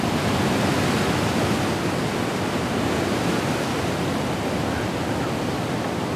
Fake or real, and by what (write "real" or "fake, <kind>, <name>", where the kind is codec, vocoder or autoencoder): real